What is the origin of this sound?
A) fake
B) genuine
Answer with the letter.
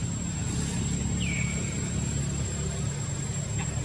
B